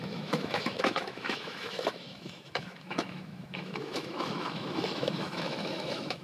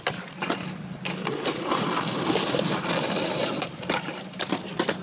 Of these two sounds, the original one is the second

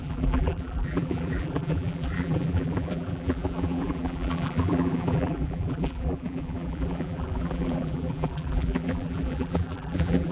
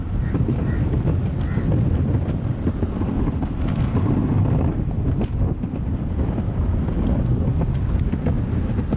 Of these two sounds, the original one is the second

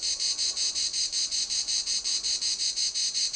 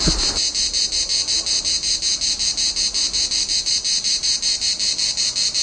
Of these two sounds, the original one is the second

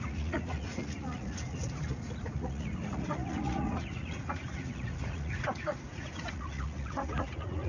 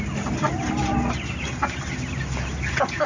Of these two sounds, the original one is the second